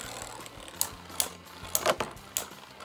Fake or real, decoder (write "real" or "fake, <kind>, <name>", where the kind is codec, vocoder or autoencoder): real